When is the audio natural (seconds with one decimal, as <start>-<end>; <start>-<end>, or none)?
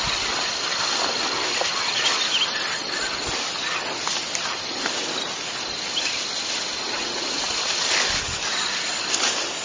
0.0-7.0; 7.6-9.6